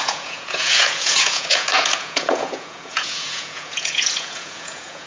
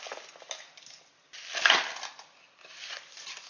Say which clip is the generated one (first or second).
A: first